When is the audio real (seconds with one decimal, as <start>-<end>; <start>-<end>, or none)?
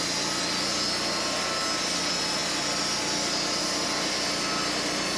0.0-5.2